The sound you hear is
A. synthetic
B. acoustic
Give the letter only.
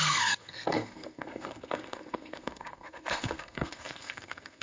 A